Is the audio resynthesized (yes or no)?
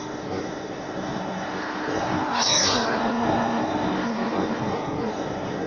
yes